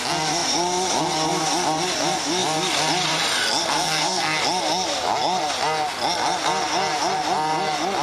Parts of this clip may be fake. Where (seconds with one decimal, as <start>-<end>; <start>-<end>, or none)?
3.6-4.4